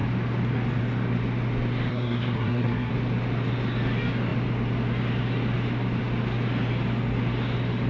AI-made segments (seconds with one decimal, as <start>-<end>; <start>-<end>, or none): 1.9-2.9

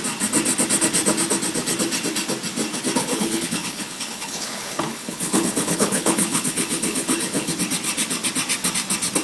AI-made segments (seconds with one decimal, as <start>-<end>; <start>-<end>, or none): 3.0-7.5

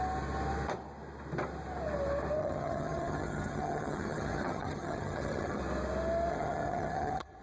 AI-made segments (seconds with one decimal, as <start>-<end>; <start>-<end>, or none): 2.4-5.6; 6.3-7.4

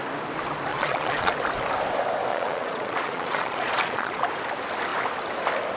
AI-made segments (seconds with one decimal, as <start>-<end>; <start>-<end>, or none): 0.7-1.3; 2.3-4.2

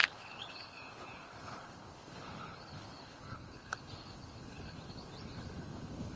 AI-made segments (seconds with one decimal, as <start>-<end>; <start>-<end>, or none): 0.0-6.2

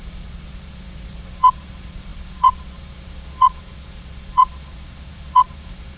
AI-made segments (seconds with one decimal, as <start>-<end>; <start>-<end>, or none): 0.0-6.0

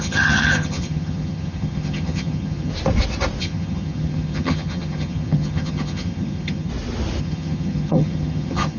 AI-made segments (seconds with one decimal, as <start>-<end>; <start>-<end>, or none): 0.0-2.7; 3.4-6.7; 7.2-8.8